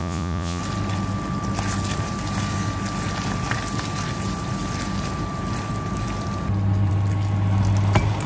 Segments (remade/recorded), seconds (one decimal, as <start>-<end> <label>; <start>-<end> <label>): 0.0-0.6 remade; 0.6-8.3 recorded